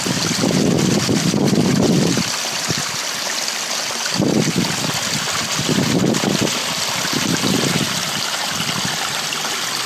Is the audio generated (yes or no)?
no